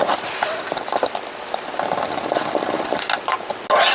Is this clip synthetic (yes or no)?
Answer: no